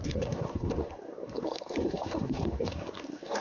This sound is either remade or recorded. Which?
remade